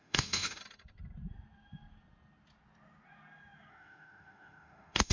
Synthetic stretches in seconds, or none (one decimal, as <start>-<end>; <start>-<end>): 0.0-0.6; 3.7-5.1